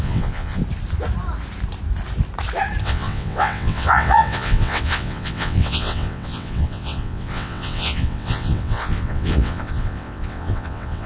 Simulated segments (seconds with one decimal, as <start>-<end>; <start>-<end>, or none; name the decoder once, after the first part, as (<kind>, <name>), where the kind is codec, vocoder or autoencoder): 0.0-0.6 (vocoder, WaveNeXt); 2.8-11.1